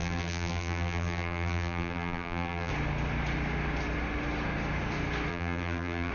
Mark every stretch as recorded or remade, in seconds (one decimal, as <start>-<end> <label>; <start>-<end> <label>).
0.0-2.7 remade; 2.7-5.3 recorded; 5.3-6.1 remade